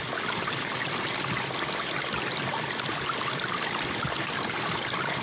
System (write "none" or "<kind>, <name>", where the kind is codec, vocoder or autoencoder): none